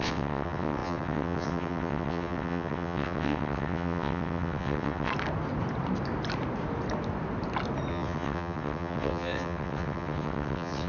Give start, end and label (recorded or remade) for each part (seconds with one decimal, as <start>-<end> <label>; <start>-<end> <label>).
0.0-5.1 remade; 5.1-7.9 recorded; 7.9-10.9 remade